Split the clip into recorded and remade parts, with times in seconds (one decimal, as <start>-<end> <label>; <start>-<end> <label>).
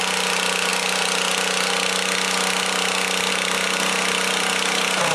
0.0-5.1 recorded